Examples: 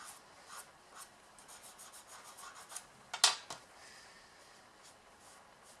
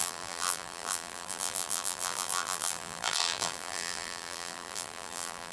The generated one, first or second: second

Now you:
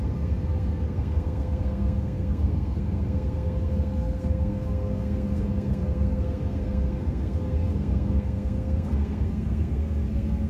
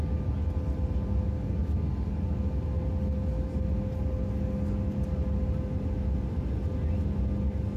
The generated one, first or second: first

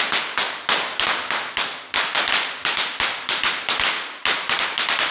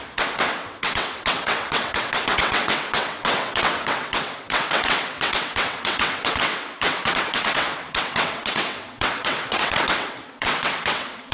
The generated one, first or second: second